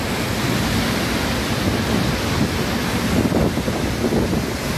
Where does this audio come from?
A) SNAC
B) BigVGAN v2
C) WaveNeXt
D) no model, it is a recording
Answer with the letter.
D